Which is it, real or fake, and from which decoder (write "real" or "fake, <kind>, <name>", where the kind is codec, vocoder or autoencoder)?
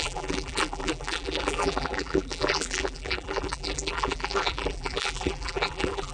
fake, vocoder, BigVGAN v2